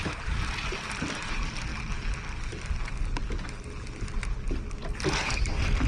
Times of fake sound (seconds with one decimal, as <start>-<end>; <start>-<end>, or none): 0.0-1.7; 5.2-5.9